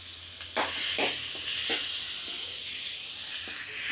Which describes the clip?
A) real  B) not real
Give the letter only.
A